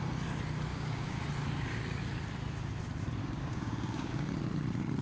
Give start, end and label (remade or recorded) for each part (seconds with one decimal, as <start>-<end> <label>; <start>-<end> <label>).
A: 0.0-0.7 recorded; 0.7-1.2 remade; 1.2-3.2 recorded; 3.2-4.3 remade; 4.3-5.0 recorded